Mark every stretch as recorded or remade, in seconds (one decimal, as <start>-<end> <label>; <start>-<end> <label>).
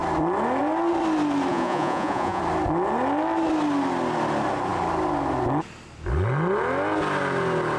0.0-1.5 recorded; 1.5-2.4 remade; 2.4-7.8 recorded